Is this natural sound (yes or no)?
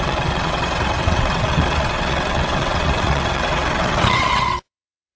no